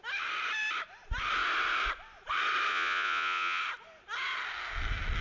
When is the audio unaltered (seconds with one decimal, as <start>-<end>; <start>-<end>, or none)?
0.0-2.7; 3.6-5.2